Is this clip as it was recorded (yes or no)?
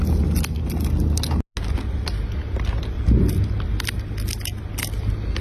yes